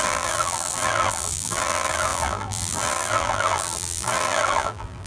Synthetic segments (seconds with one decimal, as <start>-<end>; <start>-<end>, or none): 0.0-5.1